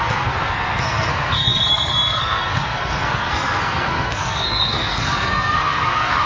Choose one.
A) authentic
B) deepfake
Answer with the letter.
B